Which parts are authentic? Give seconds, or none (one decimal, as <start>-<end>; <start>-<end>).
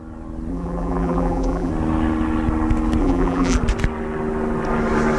0.0-0.5; 1.7-3.0; 3.6-5.2